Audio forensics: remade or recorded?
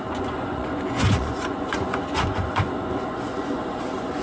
remade